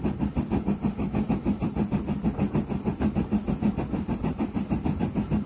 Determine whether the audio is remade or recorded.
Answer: remade